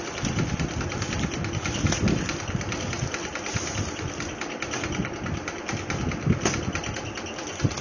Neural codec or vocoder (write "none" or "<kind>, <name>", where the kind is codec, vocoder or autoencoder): none